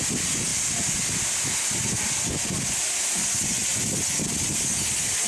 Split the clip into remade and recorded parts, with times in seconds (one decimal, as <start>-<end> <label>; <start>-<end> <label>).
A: 0.0-5.3 recorded